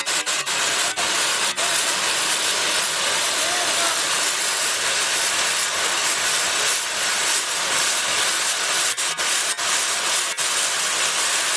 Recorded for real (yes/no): yes